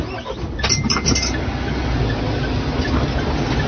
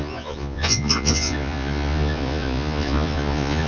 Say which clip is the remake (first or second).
second